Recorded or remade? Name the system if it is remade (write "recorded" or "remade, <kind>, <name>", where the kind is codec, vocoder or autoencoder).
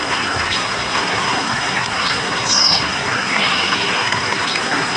remade, codec, SNAC